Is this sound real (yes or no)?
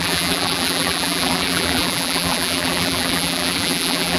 no